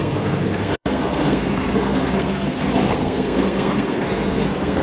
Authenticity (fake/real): fake